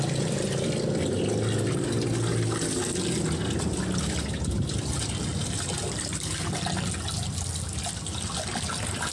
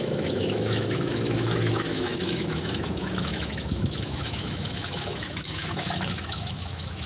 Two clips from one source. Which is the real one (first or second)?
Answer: first